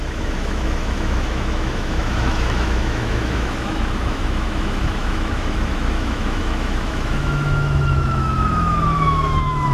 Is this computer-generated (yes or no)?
yes